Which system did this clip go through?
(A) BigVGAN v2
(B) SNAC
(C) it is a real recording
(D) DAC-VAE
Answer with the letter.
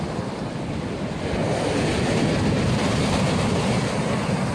C